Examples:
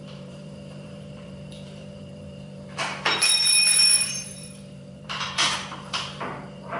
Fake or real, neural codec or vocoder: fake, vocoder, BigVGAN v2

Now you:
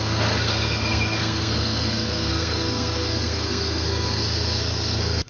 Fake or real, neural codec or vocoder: fake, codec, SNAC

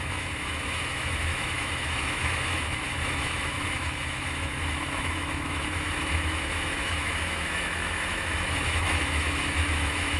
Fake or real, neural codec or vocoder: fake, autoencoder, DAC-VAE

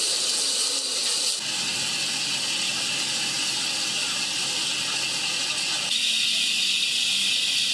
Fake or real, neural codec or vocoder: real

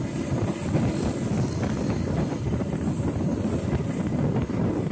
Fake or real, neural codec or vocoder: real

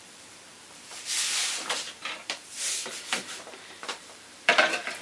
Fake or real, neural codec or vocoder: fake, vocoder, BigVGAN v2